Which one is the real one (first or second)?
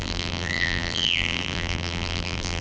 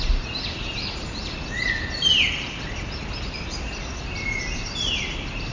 second